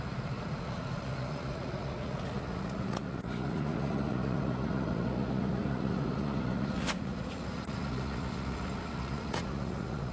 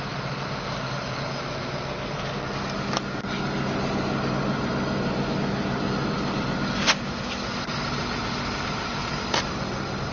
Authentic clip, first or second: second